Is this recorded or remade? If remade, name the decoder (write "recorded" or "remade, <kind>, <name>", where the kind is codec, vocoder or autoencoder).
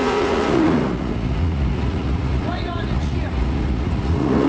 remade, vocoder, Vocos